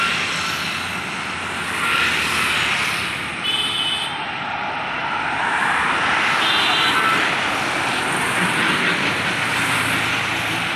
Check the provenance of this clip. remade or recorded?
recorded